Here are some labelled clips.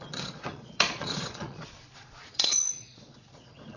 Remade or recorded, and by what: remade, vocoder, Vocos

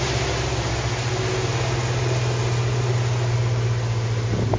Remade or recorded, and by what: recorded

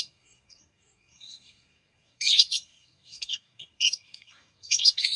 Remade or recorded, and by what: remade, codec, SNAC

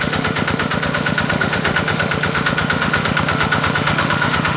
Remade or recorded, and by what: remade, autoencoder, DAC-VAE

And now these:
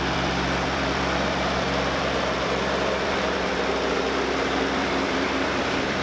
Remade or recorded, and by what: remade, vocoder, BigVGAN v2